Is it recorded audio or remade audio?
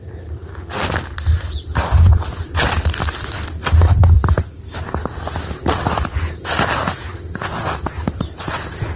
recorded